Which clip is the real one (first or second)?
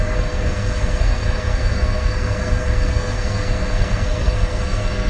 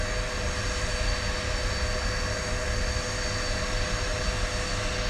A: second